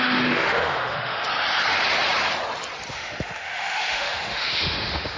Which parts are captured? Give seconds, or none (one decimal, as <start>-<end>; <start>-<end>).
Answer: 1.3-2.9